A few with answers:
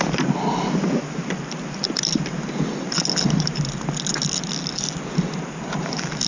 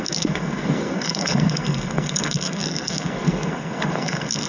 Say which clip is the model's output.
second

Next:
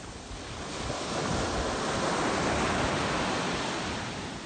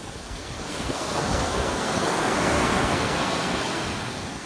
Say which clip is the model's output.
second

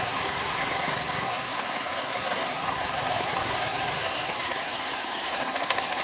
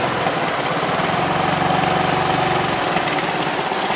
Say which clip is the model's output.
first